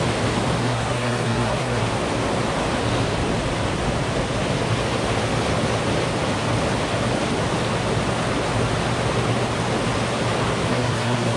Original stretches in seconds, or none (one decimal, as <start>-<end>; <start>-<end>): 0.0-0.6; 1.8-10.7